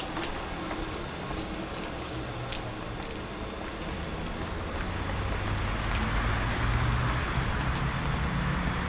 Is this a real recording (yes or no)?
yes